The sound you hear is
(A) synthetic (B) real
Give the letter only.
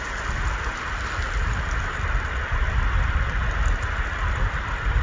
B